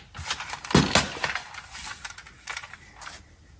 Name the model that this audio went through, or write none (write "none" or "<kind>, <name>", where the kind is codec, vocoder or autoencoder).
none